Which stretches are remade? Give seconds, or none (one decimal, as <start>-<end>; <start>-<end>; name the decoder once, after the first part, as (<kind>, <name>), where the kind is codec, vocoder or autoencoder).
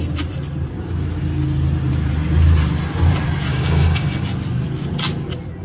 3.5-4.2 (codec, DAC)